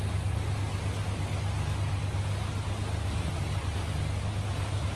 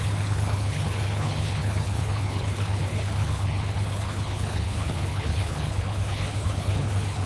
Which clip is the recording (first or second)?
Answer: first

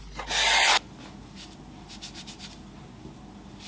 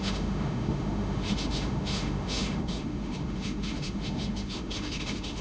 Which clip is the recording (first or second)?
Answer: first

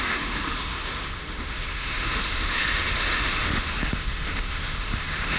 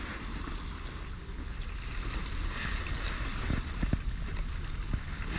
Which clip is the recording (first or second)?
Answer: second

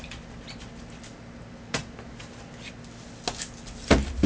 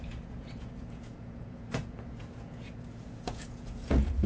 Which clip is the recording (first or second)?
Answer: first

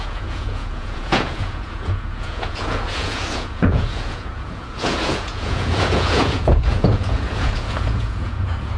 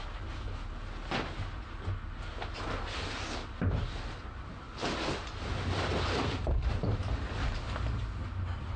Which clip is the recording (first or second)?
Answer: second